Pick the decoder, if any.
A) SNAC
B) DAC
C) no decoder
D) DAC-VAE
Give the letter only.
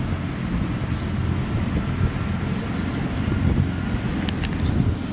C